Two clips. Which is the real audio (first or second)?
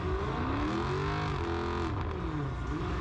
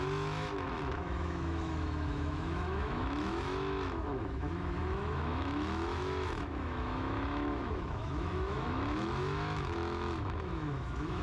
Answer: first